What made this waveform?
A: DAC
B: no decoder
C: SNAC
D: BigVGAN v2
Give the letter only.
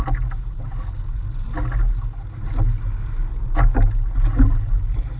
B